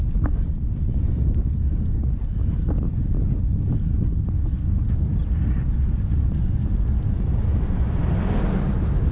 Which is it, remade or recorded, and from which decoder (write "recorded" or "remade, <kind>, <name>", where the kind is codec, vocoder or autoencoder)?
recorded